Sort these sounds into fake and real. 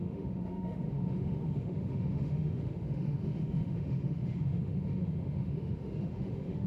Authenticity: fake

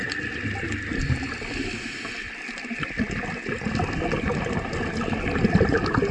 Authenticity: real